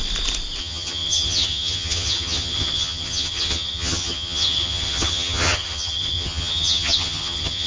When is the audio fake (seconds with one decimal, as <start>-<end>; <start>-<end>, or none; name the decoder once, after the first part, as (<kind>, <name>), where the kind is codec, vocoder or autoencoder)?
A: 0.6-7.7 (vocoder, HiFi-GAN)